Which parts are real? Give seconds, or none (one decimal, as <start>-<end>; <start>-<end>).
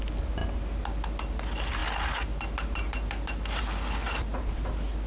0.0-5.1